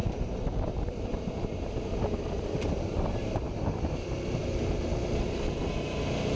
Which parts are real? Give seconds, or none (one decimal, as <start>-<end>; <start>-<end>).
3.8-6.4